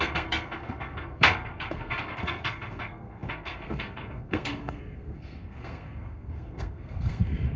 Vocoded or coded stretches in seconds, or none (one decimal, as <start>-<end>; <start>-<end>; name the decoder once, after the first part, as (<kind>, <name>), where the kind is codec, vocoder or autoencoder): 0.0-7.6 (codec, SNAC)